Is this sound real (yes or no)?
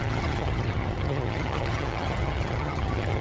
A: no